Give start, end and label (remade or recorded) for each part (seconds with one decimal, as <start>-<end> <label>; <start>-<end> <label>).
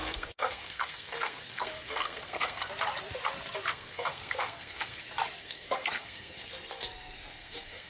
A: 0.0-2.7 remade; 2.7-3.7 recorded; 3.7-5.0 remade; 5.0-5.4 recorded; 5.4-7.9 remade